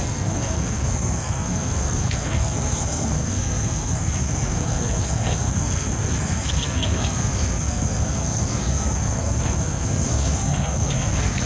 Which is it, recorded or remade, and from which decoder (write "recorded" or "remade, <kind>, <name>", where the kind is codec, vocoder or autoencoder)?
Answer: remade, codec, SNAC